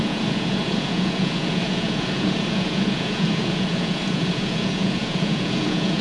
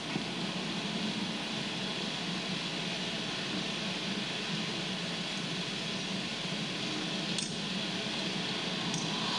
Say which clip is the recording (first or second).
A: second